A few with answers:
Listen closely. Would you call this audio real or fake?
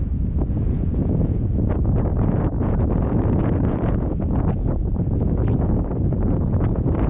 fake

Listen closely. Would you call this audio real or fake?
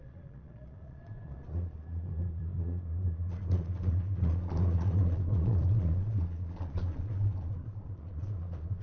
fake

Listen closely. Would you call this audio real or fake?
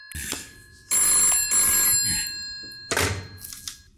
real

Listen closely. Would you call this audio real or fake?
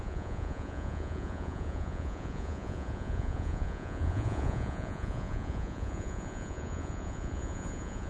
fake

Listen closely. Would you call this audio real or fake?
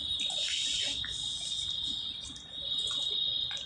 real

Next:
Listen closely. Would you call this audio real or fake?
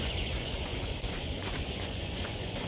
fake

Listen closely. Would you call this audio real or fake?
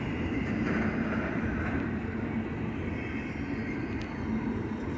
real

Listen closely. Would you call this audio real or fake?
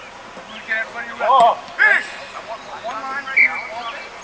real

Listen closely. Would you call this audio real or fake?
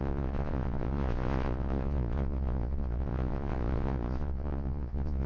fake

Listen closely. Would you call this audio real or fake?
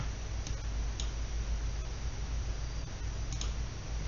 real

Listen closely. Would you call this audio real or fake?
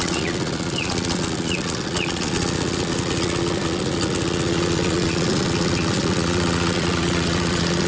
fake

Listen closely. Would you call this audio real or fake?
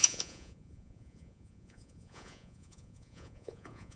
fake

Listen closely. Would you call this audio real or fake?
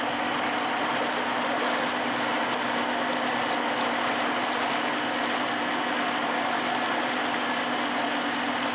real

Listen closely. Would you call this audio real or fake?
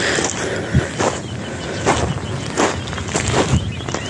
real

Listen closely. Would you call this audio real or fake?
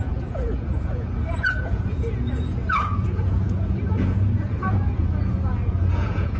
fake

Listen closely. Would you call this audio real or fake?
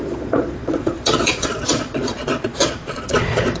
fake